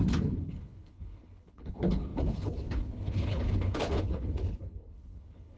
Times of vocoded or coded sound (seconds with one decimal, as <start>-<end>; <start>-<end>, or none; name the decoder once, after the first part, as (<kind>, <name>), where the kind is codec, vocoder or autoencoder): 0.0-5.6 (codec, HILCodec)